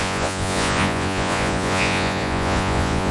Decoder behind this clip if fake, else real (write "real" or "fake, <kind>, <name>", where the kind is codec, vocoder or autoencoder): fake, vocoder, Vocos